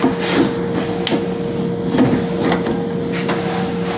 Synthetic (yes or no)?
no